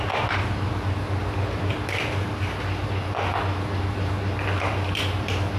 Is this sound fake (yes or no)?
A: no